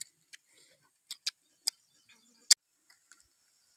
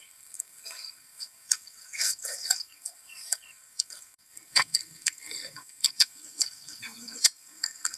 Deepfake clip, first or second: second